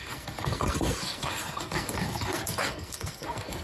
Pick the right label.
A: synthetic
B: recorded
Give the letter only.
A